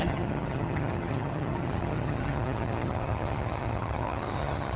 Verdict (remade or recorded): remade